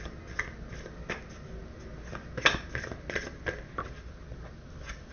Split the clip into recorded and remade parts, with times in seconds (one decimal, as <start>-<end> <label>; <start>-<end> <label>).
0.0-5.1 recorded